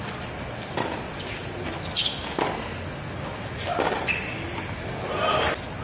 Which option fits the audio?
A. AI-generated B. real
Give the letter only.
B